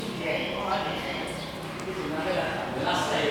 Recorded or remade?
recorded